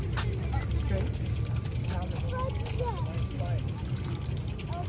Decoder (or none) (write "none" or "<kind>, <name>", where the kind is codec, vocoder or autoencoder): none